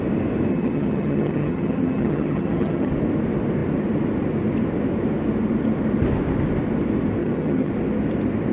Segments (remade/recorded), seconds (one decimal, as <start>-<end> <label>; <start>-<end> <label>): 0.0-0.5 recorded; 0.5-2.9 remade; 2.9-7.2 recorded; 7.2-7.7 remade; 7.7-8.5 recorded